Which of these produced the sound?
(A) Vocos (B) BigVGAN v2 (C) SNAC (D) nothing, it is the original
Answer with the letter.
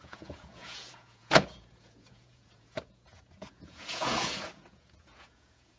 A